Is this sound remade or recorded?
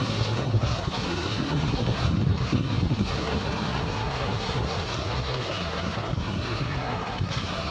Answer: remade